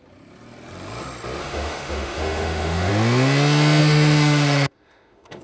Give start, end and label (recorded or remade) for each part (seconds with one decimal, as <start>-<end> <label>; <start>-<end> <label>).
0.0-1.4 recorded; 1.4-2.9 remade; 2.9-3.8 recorded; 3.8-5.4 remade